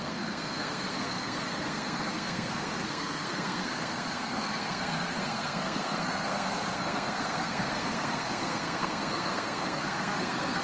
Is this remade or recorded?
remade